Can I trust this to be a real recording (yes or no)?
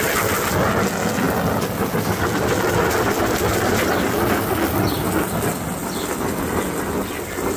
yes